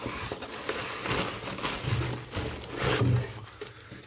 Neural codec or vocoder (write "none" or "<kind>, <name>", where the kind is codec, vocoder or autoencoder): none